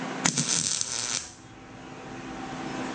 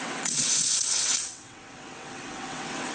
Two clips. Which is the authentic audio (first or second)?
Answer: first